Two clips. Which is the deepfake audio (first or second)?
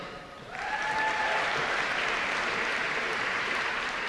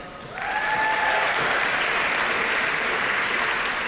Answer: first